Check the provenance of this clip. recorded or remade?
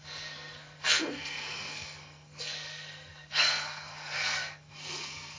remade